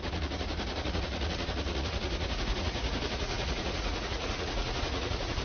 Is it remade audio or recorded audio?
remade